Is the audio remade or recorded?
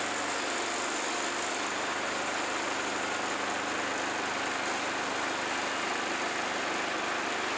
recorded